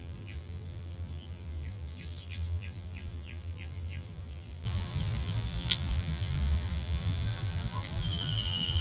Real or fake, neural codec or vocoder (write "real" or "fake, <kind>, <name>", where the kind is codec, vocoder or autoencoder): fake, vocoder, BigVGAN v2